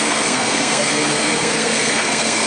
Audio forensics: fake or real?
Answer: fake